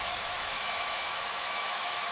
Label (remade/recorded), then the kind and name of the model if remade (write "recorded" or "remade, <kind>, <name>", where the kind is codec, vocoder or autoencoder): remade, autoencoder, DAC-VAE